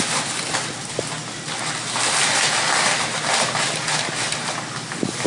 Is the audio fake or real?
real